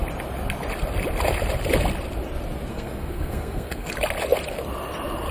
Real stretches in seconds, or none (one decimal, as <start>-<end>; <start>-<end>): 0.0-2.7; 3.9-5.3